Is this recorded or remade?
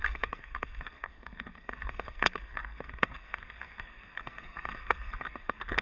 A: remade